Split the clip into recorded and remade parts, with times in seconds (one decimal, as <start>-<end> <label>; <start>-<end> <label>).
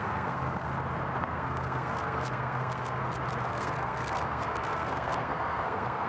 0.0-0.7 remade; 0.7-1.2 recorded; 1.2-3.0 remade; 3.0-3.5 recorded; 3.5-6.1 remade